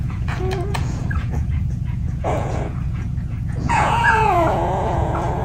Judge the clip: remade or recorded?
remade